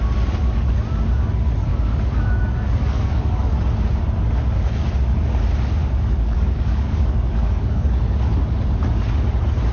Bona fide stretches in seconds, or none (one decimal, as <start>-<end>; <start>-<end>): 0.0-1.7; 3.6-5.8; 7.9-9.7